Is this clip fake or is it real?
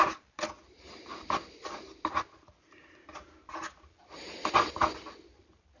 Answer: real